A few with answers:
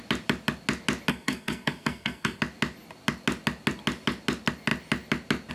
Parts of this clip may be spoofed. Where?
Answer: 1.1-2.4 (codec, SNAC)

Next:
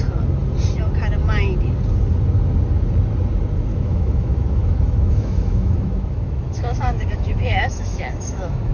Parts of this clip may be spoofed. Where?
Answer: 3.7-8.7 (autoencoder, DAC-VAE)